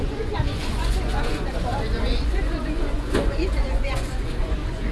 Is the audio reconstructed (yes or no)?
yes